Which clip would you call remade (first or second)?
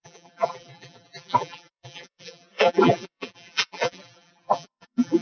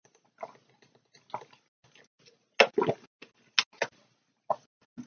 first